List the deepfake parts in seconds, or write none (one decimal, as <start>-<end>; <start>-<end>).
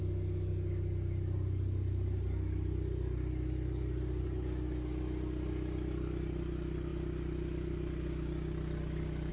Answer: none